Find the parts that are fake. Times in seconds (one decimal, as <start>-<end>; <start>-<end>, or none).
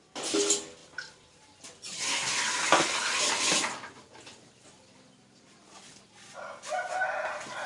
none